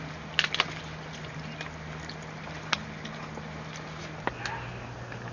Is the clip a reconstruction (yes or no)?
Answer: no